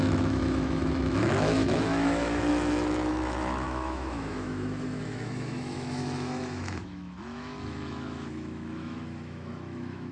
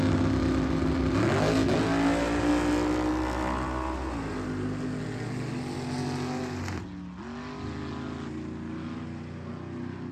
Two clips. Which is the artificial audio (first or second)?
first